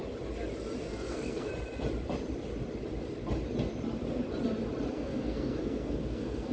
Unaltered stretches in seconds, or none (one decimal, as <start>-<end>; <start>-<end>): 0.0-0.8; 1.5-4.9